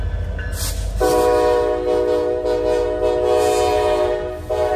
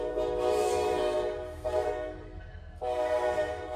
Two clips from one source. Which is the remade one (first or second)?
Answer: second